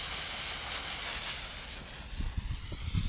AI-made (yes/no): no